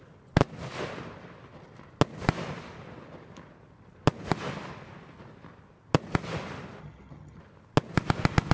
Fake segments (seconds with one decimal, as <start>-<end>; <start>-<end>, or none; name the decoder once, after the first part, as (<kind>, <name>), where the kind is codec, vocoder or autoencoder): 6.8-7.4 (vocoder, HiFi-GAN)